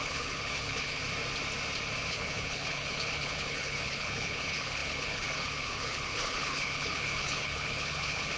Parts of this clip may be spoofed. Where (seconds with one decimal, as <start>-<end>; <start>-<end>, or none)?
0.0-1.0; 2.1-8.4